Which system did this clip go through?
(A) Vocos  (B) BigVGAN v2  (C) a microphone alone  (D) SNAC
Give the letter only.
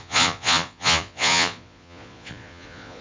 A